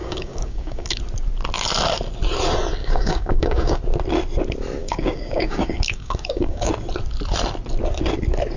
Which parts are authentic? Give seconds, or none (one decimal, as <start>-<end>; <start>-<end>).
1.0-2.8; 3.8-4.8; 6.7-8.6